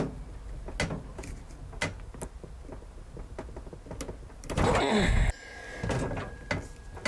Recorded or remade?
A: recorded